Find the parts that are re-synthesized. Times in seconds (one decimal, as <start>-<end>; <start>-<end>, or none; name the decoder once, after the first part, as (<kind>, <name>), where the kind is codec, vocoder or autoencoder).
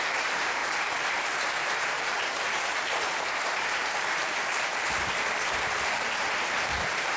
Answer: 0.0-7.2 (vocoder, BigVGAN v2)